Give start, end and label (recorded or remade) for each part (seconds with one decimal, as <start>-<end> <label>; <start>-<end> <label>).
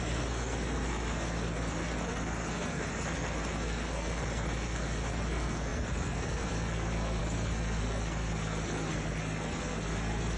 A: 0.0-10.4 remade